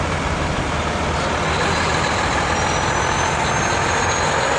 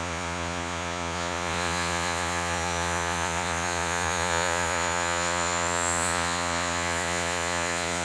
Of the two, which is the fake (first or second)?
second